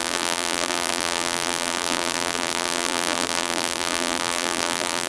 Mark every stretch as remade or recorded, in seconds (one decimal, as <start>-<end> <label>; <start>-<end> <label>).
0.0-5.1 remade